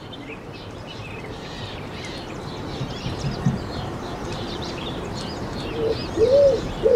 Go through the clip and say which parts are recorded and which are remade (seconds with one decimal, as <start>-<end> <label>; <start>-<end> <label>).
0.0-1.0 recorded; 1.0-5.2 remade; 5.2-6.0 recorded; 6.0-6.6 remade; 6.6-7.0 recorded